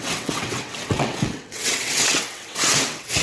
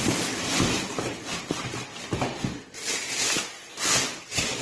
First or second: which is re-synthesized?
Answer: first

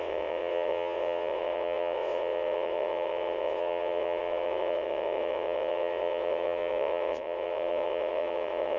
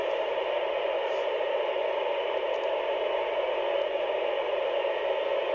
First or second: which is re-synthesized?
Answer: first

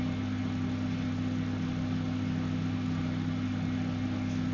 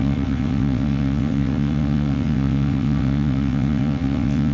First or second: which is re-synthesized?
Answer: second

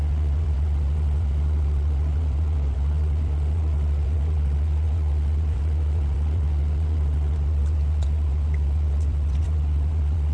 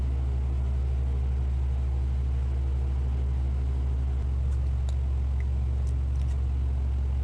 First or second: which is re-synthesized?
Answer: first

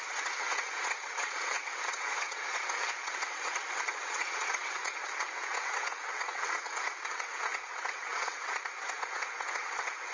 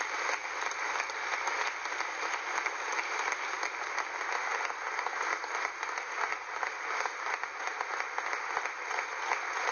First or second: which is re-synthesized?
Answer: first